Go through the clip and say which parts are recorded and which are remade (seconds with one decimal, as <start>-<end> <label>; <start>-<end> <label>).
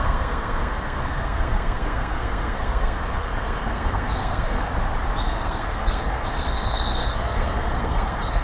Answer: 0.0-4.7 remade; 4.7-5.2 recorded; 5.2-8.4 remade